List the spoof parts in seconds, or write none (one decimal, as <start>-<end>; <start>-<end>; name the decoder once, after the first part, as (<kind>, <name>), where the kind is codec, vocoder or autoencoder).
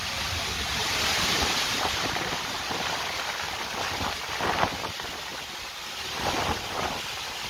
0.8-2.6 (vocoder, BigVGAN v2)